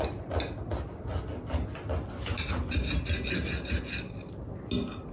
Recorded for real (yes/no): yes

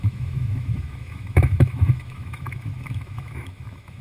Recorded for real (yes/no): no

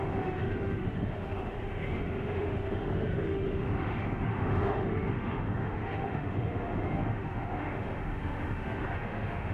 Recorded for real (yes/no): no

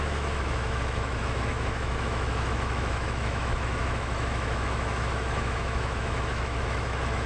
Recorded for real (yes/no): no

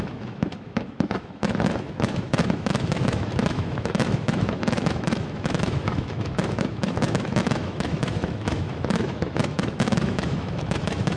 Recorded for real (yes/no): no